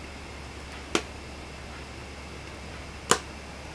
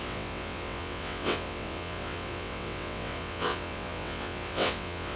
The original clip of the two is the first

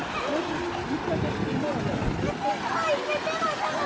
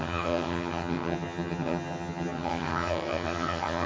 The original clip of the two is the first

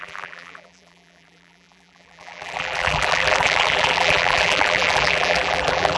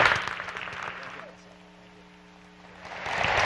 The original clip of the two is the second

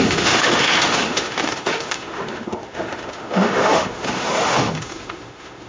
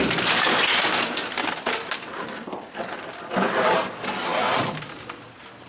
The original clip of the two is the second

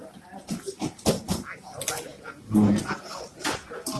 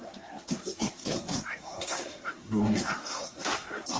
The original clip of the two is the first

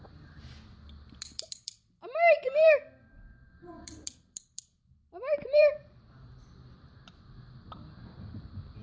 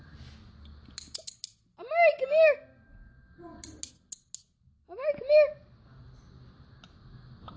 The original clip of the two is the second